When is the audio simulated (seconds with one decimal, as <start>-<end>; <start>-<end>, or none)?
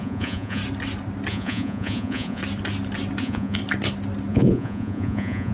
0.0-0.6; 1.3-2.4; 3.2-3.6; 4.3-5.5